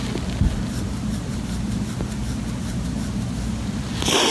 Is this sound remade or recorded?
recorded